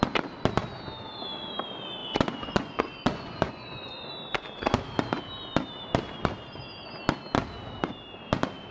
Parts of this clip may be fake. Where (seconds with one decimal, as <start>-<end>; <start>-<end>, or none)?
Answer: 2.0-4.1